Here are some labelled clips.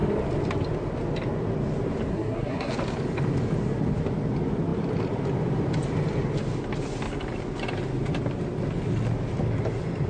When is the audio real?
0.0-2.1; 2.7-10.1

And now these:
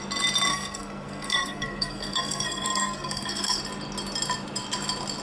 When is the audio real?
0.0-0.5; 3.6-5.2

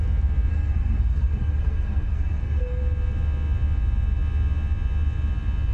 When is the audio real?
0.0-0.5; 2.8-5.7

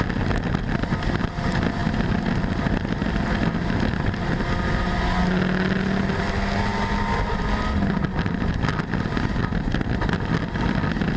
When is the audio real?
0.0-11.2

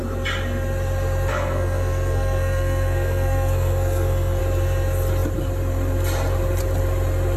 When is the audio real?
0.0-1.3; 4.4-7.4

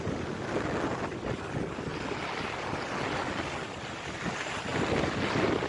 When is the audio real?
0.0-5.7